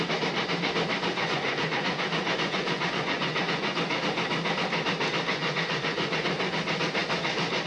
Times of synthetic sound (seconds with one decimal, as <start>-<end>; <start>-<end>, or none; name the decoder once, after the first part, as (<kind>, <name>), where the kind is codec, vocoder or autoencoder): 1.1-3.9 (vocoder, Vocos); 5.3-6.6